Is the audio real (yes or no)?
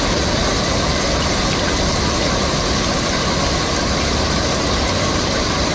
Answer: yes